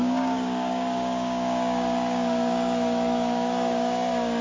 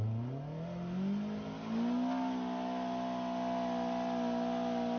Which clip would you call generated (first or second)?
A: first